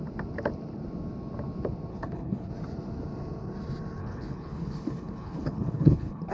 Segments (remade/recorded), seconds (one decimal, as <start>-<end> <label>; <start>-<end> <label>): 0.0-1.9 recorded; 1.9-2.5 remade; 2.5-4.0 recorded; 4.0-6.3 remade